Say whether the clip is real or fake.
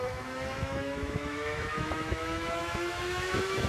fake